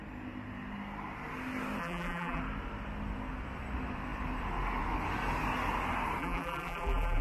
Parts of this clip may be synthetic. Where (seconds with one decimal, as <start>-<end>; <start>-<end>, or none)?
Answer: 1.8-2.4; 6.2-7.2